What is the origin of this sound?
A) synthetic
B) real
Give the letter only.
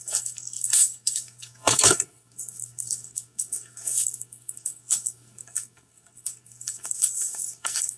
A